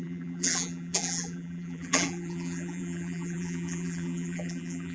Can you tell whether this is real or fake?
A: fake